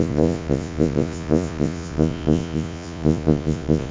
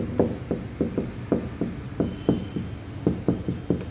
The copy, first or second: first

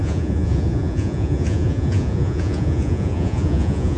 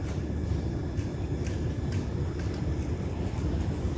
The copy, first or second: first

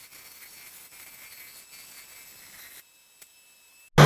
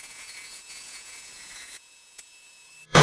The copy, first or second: second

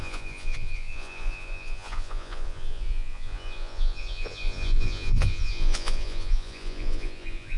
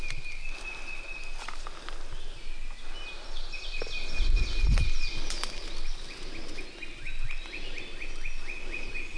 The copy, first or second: first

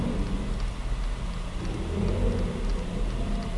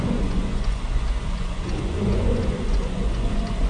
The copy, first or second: second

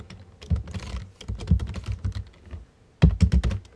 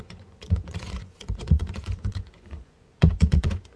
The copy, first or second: second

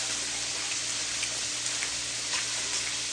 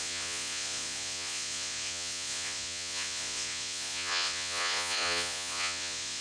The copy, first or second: second